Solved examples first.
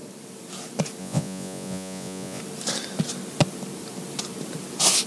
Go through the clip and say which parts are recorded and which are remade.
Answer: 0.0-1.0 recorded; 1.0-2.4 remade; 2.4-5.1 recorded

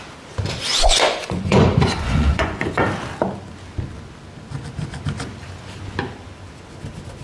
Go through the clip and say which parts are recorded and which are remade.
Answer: 0.0-0.7 recorded; 0.7-2.8 remade; 2.8-7.2 recorded

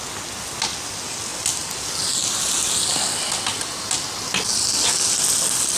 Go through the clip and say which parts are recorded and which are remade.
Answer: 0.0-5.8 recorded